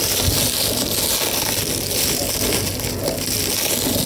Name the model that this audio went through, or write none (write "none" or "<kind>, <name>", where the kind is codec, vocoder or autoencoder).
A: none